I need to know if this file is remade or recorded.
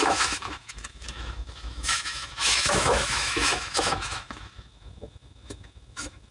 remade